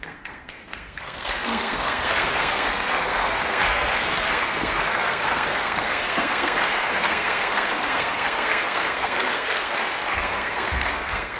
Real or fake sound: fake